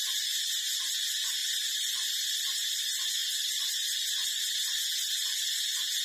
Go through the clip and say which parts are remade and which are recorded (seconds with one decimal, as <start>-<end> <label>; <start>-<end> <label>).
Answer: 0.0-1.4 recorded; 1.4-2.8 remade; 2.8-3.2 recorded; 3.2-4.8 remade; 4.8-6.0 recorded